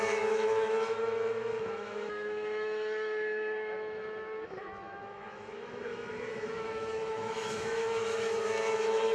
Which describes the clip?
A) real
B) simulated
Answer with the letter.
B